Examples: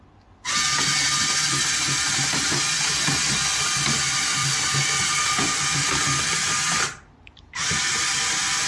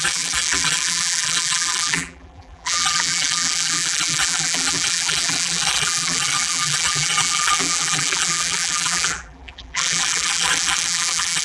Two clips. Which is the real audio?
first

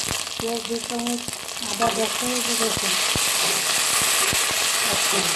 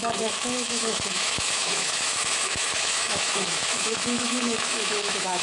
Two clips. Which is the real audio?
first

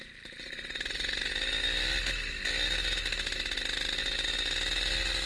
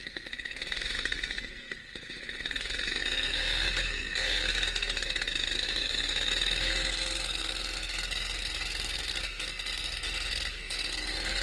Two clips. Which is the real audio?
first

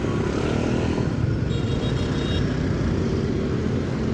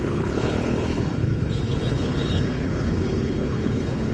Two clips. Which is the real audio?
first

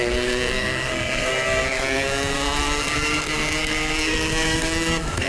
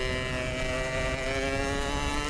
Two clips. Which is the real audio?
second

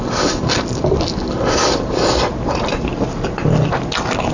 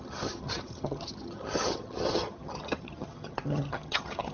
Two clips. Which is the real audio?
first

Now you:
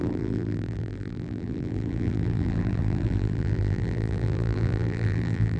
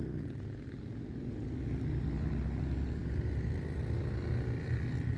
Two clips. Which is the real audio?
second